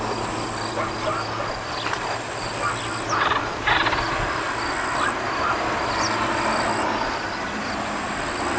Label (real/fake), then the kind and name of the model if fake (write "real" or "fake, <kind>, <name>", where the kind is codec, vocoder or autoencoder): real